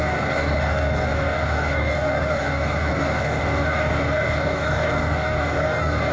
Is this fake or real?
fake